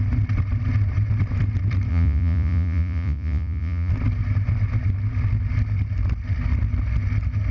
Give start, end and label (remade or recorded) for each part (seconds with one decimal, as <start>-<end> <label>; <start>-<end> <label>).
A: 0.0-1.9 recorded; 1.9-3.9 remade; 3.9-7.5 recorded